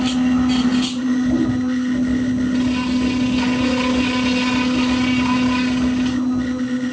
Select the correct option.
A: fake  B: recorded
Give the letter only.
B